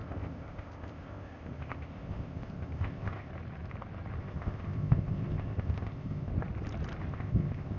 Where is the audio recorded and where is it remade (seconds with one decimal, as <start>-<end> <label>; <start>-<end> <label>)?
0.0-3.3 remade; 3.3-4.2 recorded; 4.2-6.3 remade; 6.3-7.1 recorded; 7.1-7.8 remade